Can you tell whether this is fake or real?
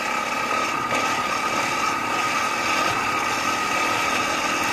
real